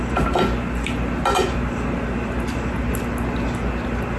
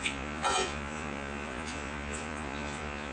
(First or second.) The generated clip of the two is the second